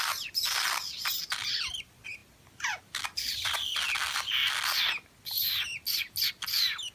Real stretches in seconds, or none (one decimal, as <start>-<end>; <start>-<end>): 0.0-6.9